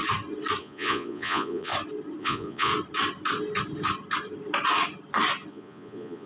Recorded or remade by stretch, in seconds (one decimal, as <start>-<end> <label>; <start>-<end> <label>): 0.0-0.6 recorded; 0.6-1.7 remade; 1.7-2.2 recorded; 2.2-2.7 remade; 2.7-5.5 recorded; 5.5-6.3 remade